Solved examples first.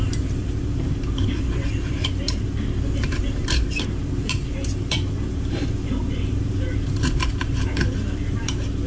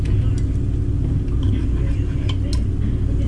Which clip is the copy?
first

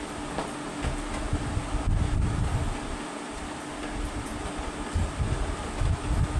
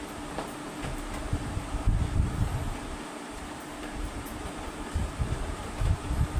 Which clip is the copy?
second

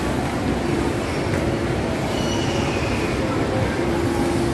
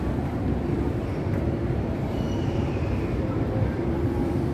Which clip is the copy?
second